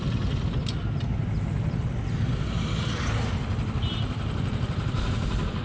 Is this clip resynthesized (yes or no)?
no